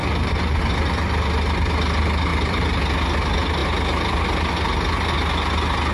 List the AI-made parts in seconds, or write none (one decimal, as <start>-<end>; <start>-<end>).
0.0-0.6; 2.3-2.8